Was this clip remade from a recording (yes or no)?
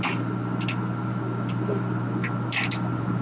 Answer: no